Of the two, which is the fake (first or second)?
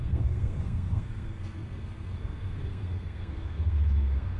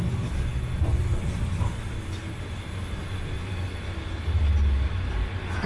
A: first